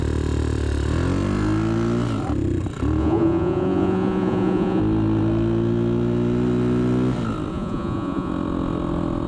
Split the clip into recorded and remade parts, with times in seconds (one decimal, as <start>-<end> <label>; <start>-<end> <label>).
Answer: 0.0-3.0 recorded; 3.0-4.8 remade; 4.8-7.5 recorded; 7.5-8.3 remade; 8.3-9.3 recorded

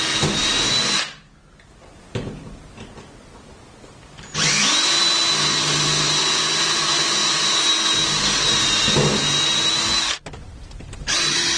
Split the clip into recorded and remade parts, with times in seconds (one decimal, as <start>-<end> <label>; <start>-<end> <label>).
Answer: 0.0-11.6 recorded

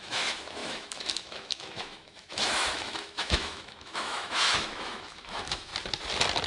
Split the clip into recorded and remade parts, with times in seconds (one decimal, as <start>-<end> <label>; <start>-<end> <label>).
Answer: 0.0-5.7 remade; 5.7-6.5 recorded

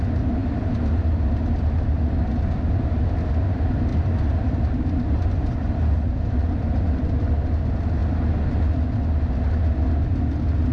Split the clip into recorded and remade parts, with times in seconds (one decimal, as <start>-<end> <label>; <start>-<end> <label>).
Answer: 0.0-0.4 recorded; 0.4-2.8 remade; 2.8-3.9 recorded; 3.9-7.5 remade; 7.5-10.7 recorded

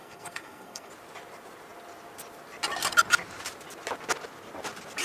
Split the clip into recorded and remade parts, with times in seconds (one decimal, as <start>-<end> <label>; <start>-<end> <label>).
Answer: 0.0-0.9 remade; 0.9-5.0 recorded